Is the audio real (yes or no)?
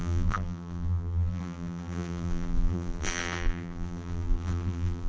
no